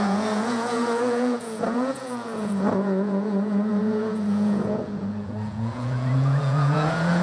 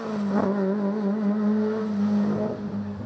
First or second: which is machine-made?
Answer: first